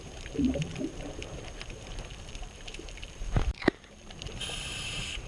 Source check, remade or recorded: remade